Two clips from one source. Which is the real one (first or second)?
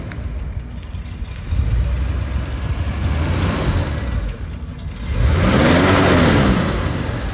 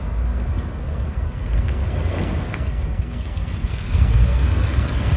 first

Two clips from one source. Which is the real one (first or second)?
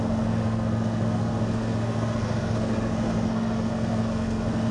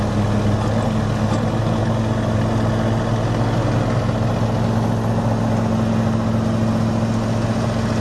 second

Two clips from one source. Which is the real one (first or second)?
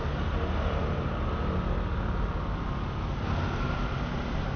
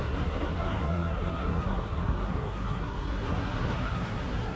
first